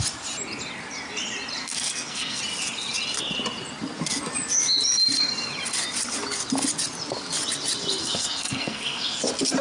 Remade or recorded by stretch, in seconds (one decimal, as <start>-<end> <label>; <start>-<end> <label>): 0.0-1.6 recorded; 1.6-2.4 remade; 2.4-8.0 recorded; 8.0-9.2 remade; 9.2-9.6 recorded